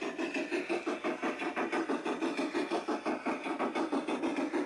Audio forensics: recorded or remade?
recorded